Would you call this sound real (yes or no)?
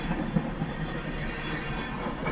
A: yes